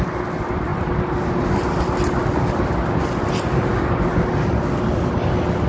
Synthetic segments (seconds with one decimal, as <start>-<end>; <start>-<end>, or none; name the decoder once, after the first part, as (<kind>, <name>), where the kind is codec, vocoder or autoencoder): none